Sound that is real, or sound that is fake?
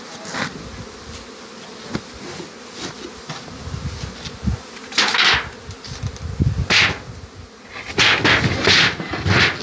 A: real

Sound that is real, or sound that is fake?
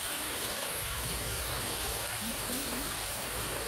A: fake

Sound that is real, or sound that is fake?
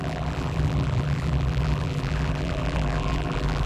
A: fake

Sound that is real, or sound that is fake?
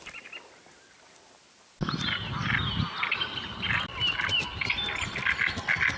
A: real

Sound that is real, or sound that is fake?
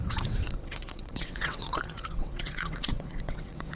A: fake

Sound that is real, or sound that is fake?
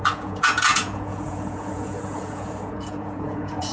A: fake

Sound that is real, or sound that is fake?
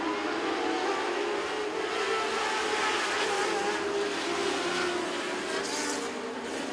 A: real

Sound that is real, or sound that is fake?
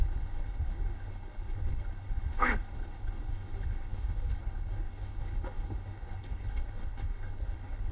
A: fake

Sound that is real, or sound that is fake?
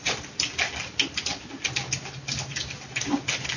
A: real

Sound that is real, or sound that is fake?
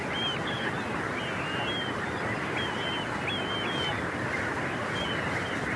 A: real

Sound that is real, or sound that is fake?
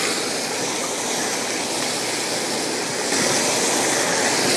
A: real